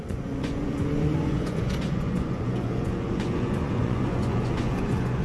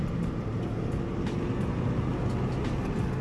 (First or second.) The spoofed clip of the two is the first